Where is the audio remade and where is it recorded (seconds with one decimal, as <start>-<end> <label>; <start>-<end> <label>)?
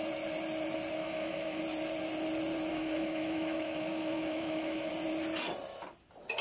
0.0-1.0 recorded; 1.0-1.6 remade; 1.6-2.7 recorded; 2.7-4.9 remade; 4.9-6.4 recorded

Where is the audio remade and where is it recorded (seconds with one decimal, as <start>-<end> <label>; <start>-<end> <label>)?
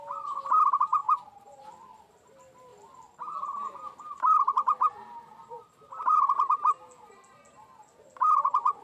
0.0-8.8 recorded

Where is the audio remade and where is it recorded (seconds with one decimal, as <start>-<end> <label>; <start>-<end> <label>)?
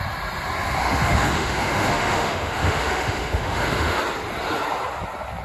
0.0-0.8 recorded; 0.8-4.0 remade; 4.0-5.4 recorded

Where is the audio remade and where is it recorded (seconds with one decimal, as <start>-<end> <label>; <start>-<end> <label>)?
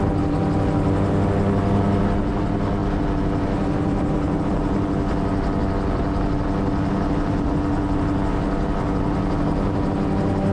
0.0-10.5 recorded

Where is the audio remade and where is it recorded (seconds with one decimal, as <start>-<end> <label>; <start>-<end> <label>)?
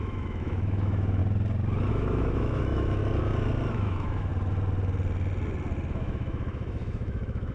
0.0-1.2 remade; 1.2-1.9 recorded; 1.9-3.0 remade; 3.0-3.7 recorded; 3.7-4.3 remade; 4.3-5.9 recorded; 5.9-7.5 remade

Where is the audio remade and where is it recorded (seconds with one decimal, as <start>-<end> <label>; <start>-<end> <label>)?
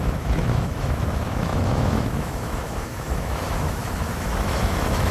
0.0-5.1 remade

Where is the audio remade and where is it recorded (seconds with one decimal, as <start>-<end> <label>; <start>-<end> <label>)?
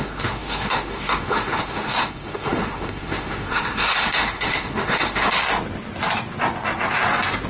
0.0-5.4 remade; 5.4-7.5 recorded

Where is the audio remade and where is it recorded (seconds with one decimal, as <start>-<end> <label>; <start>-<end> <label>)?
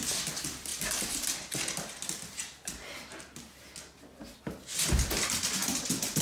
0.0-6.2 recorded